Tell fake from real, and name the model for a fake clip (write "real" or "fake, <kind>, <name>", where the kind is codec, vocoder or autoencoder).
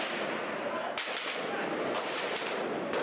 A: real